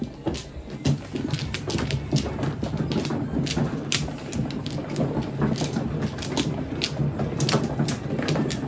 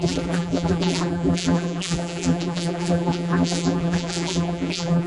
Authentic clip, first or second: first